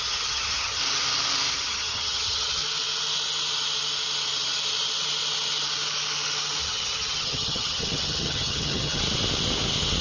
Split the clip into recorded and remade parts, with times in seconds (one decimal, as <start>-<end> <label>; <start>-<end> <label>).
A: 0.0-0.8 remade; 0.8-1.5 recorded; 1.5-2.6 remade; 2.6-6.6 recorded; 6.6-9.0 remade; 9.0-10.0 recorded